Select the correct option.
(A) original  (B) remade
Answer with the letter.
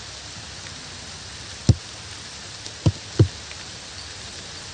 A